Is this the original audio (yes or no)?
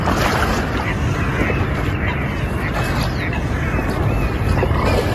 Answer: yes